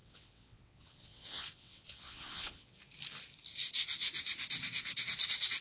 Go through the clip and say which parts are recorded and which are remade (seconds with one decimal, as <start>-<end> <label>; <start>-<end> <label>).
0.0-2.8 remade; 2.8-5.6 recorded